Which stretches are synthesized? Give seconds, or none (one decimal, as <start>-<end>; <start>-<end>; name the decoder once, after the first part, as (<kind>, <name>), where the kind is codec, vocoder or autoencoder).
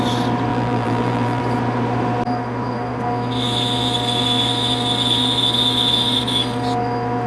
0.5-1.4 (vocoder, BigVGAN v2)